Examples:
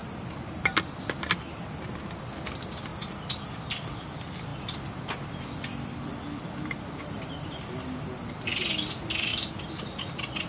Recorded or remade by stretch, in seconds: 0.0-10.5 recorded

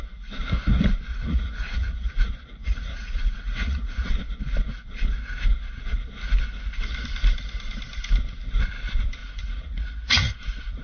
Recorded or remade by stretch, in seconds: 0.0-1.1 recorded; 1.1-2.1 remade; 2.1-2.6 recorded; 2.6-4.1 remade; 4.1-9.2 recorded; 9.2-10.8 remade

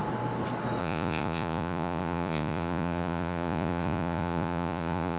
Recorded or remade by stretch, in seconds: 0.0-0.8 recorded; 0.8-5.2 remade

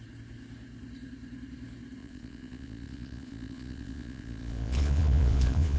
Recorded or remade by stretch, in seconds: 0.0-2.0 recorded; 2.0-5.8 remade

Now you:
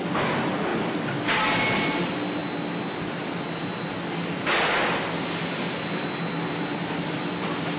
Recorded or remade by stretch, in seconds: 0.0-7.8 recorded

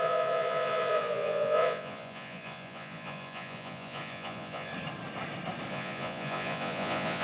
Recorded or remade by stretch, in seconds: 0.0-4.7 remade; 4.7-5.7 recorded; 5.7-7.2 remade